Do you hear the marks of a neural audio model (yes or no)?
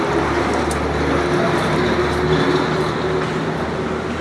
no